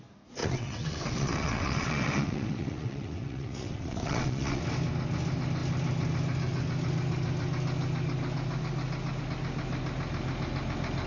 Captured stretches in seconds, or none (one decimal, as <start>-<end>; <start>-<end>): 0.0-0.4; 4.6-11.1

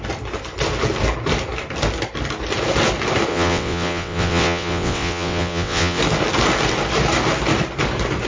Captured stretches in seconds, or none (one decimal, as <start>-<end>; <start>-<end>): 0.0-3.3; 6.0-8.3

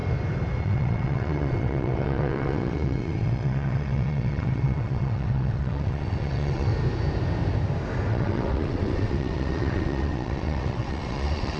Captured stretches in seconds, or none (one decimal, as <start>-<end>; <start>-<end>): 0.0-0.6; 6.7-8.1

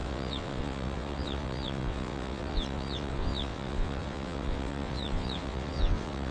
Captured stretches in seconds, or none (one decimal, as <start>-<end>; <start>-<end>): none

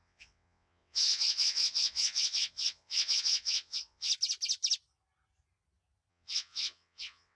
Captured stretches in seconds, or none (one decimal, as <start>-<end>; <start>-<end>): 4.1-6.1